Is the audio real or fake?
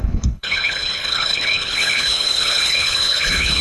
fake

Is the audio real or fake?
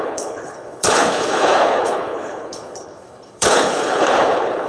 fake